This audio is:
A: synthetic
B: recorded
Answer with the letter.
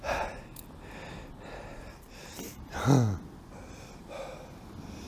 B